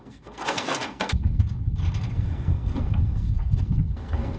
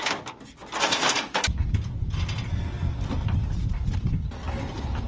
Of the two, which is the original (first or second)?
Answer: second